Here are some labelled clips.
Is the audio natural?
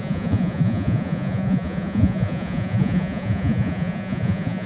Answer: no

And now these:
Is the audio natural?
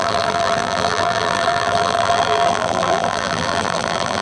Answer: no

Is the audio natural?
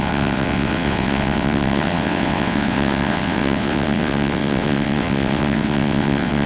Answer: no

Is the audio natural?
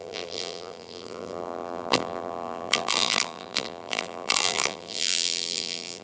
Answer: no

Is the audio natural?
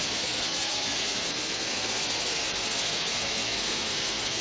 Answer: no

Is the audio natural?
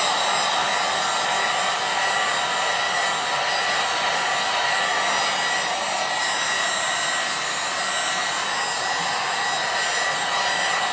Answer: yes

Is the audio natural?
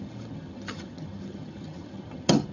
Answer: no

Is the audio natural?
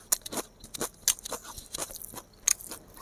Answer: yes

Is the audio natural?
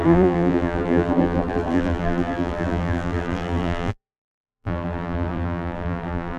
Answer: no